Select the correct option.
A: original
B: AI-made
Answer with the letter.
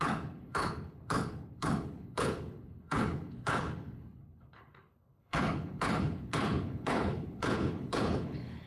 B